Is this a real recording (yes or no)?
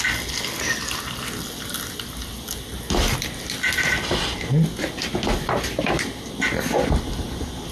yes